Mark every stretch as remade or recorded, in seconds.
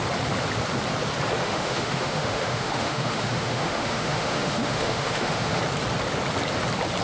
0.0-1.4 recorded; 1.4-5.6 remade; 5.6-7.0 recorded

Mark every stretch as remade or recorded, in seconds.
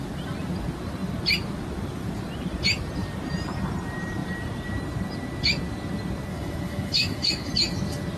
0.0-6.3 recorded; 6.3-7.5 remade; 7.5-8.2 recorded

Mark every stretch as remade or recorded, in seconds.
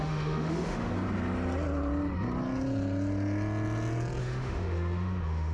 0.0-0.9 remade; 0.9-4.2 recorded; 4.2-5.5 remade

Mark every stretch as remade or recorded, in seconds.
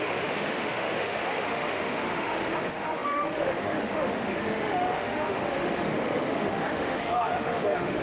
0.0-8.0 remade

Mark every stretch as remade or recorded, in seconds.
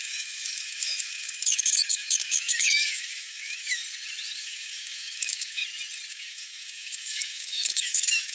0.0-3.8 remade; 3.8-4.4 recorded; 4.4-5.6 remade; 5.6-6.1 recorded; 6.1-8.3 remade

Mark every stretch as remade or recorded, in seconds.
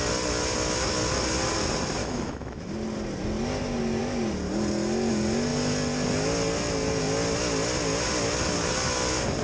0.0-2.0 recorded; 2.0-2.7 remade; 2.7-9.4 recorded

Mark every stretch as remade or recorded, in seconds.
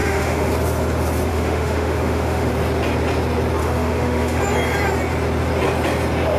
0.0-0.5 remade; 0.5-1.3 recorded; 1.3-2.5 remade; 2.5-3.6 recorded; 3.6-4.4 remade; 4.4-6.4 recorded